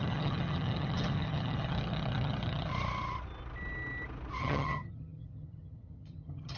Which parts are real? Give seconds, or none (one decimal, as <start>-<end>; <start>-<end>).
2.7-4.4

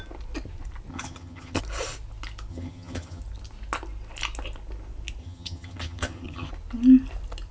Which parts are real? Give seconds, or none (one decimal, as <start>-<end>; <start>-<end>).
0.0-0.9; 1.6-2.5; 3.2-5.2; 6.5-7.5

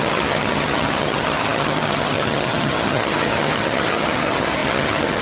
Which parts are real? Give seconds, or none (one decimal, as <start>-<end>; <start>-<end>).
none

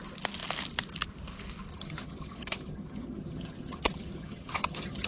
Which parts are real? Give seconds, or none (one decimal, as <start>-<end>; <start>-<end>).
0.0-1.7